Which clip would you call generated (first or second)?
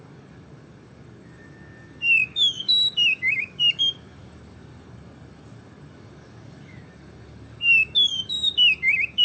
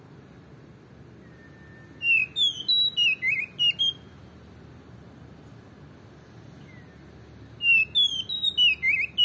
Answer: first